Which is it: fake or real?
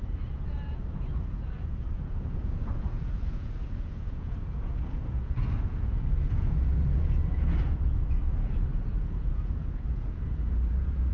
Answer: fake